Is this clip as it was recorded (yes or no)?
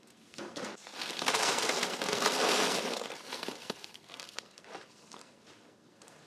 no